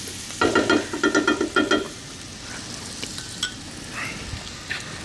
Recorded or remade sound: recorded